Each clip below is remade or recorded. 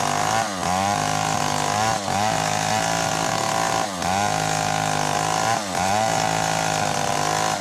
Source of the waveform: recorded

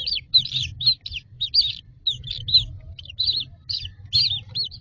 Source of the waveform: recorded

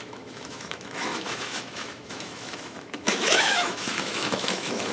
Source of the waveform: remade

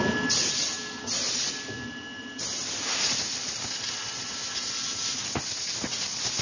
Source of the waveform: recorded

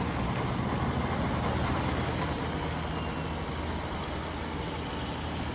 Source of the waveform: recorded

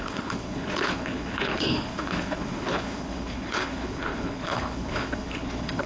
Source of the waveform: remade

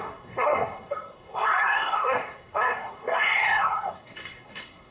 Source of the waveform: remade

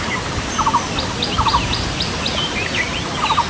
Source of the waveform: recorded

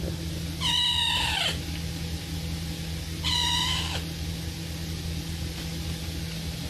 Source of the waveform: recorded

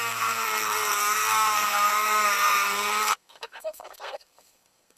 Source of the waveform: remade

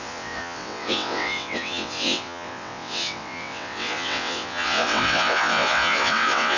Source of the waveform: remade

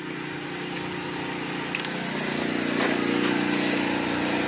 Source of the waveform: recorded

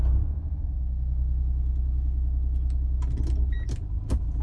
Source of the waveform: recorded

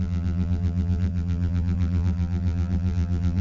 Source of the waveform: remade